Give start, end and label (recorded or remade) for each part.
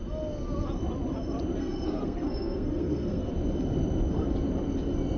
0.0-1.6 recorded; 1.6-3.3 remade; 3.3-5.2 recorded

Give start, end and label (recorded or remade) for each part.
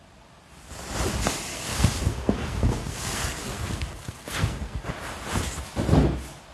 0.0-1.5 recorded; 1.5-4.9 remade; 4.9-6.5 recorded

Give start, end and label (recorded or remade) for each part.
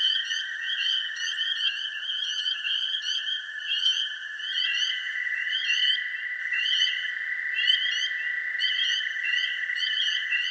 0.0-5.8 remade; 5.8-6.4 recorded; 6.4-7.1 remade; 7.1-8.6 recorded; 8.6-10.5 remade